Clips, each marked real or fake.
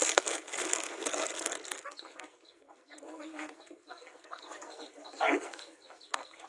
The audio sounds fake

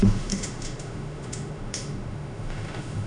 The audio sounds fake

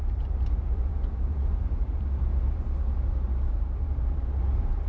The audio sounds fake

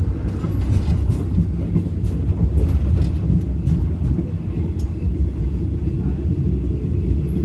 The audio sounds real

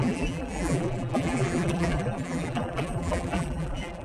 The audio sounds fake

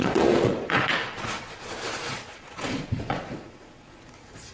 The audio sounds fake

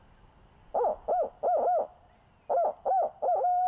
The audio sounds real